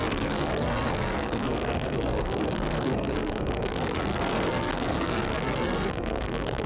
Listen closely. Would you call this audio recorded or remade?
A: remade